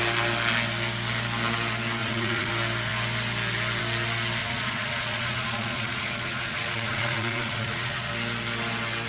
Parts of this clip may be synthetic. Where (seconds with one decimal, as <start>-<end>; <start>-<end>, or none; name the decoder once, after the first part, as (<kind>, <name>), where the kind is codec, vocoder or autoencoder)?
2.0-2.5 (vocoder, Vocos); 4.4-8.1